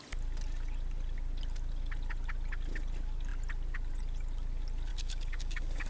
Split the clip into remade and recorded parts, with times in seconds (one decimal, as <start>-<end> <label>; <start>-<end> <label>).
0.0-4.9 recorded; 4.9-5.9 remade